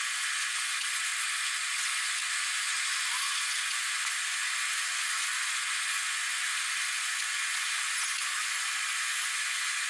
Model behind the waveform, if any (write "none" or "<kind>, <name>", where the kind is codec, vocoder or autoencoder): vocoder, Vocos